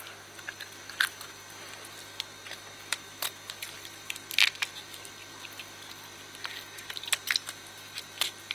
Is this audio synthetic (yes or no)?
no